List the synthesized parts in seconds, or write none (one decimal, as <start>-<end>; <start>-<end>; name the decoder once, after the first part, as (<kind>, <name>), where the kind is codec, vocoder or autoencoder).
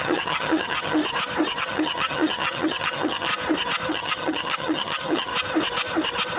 0.0-1.0 (vocoder, HiFi-GAN); 1.6-3.3; 3.9-5.3